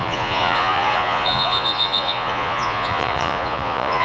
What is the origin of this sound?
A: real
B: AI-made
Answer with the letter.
B